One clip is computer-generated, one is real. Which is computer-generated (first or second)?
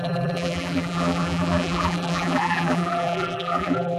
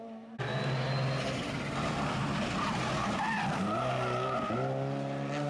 first